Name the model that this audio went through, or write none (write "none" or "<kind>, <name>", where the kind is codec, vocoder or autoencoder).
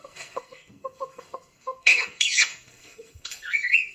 codec, SNAC